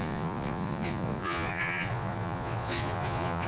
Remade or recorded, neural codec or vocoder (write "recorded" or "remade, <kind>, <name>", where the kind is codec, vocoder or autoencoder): remade, vocoder, Vocos